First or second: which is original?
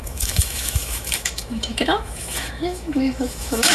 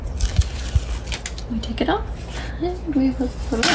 second